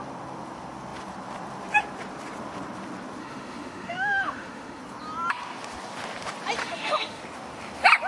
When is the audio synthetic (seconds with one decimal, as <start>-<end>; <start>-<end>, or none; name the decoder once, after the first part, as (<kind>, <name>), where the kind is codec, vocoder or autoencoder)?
3.2-4.8 (autoencoder, DAC-VAE); 6.6-7.2